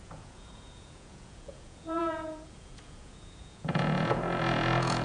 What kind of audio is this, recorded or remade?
remade